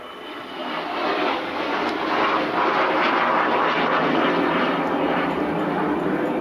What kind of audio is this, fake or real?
real